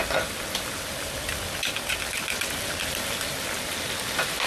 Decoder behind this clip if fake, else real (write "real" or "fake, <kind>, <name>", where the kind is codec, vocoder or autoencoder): real